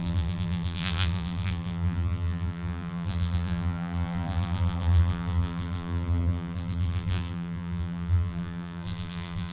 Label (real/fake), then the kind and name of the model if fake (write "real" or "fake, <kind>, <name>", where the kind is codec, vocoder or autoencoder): fake, vocoder, BigVGAN v2